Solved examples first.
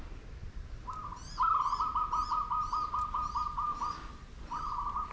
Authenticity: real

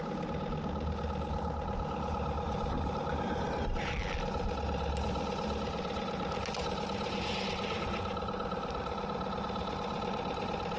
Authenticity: real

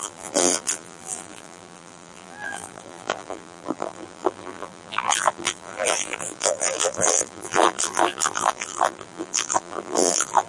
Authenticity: fake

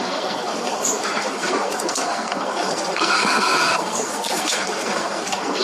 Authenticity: fake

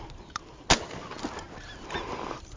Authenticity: real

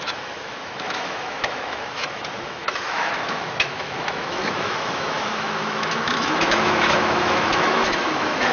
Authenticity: fake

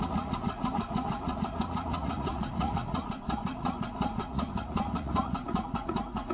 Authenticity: fake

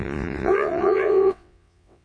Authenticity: fake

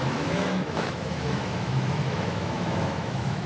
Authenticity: fake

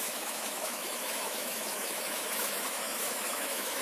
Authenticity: fake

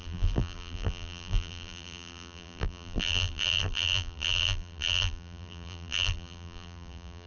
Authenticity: fake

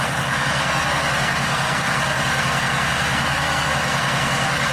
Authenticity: fake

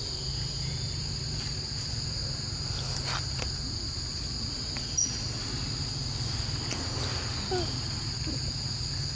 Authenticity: real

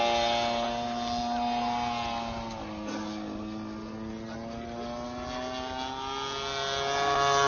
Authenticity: real